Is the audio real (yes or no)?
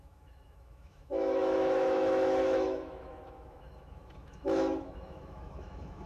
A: no